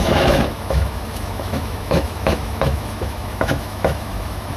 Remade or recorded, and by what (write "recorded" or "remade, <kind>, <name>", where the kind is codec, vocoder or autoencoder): remade, autoencoder, DAC-VAE